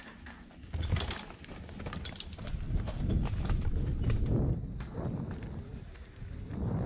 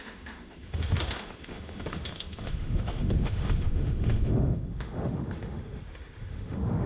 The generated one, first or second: second